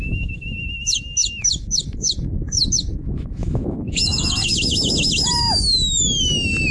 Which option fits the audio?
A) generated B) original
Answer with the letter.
A